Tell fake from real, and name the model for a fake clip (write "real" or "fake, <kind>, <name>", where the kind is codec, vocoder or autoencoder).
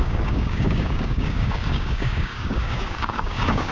fake, codec, DAC